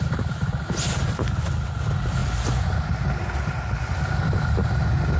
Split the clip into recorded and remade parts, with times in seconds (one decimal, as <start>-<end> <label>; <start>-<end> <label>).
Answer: 0.0-5.2 recorded